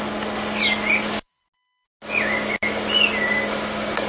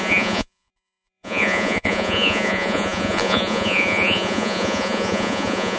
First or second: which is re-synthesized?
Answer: second